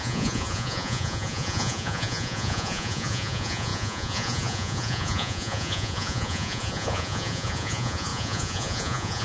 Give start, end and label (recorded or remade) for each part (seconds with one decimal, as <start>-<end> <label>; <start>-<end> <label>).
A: 0.0-9.2 remade